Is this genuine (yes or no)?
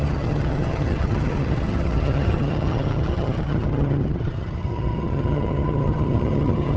no